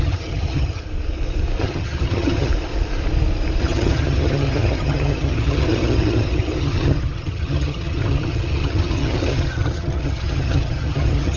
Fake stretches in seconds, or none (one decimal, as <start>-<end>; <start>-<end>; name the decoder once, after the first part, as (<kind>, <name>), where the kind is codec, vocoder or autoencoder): 0.0-0.8 (vocoder, HiFi-GAN); 1.6-2.5; 3.6-11.4